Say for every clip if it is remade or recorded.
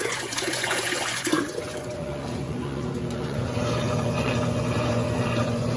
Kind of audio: remade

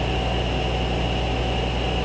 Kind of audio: recorded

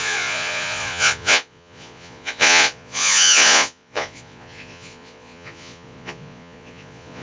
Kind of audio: remade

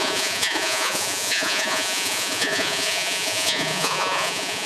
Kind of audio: remade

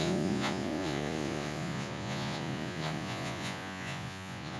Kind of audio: remade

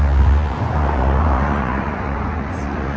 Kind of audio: remade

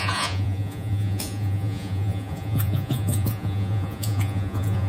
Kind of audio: remade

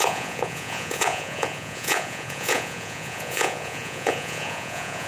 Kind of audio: remade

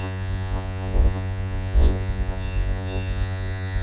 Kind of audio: remade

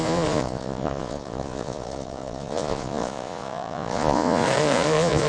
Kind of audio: remade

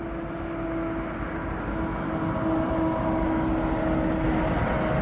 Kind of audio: recorded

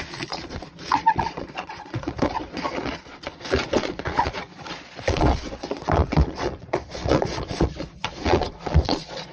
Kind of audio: remade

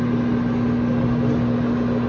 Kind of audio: recorded